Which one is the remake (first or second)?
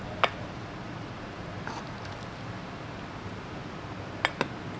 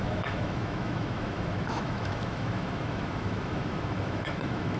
second